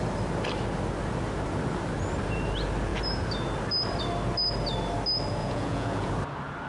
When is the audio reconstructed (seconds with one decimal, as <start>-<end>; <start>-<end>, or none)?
5.4-6.1